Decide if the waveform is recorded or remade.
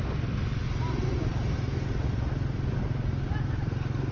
recorded